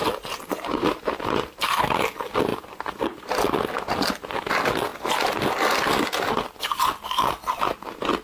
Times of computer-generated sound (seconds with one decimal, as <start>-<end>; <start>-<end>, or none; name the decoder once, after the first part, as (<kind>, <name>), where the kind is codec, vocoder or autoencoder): 0.0-1.8 (vocoder, BigVGAN v2); 2.5-3.3